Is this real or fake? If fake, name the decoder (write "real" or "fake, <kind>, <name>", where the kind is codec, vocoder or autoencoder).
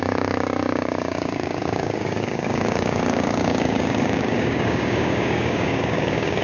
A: fake, codec, DAC